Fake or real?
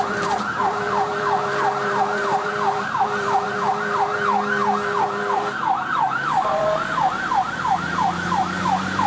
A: fake